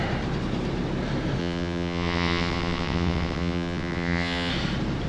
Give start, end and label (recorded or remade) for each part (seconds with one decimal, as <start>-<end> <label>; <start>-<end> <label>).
0.0-1.4 recorded; 1.4-4.5 remade; 4.5-5.1 recorded

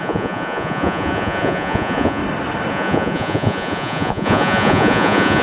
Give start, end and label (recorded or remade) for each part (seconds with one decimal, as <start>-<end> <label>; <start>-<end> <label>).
0.0-2.2 remade; 2.2-2.7 recorded; 2.7-5.4 remade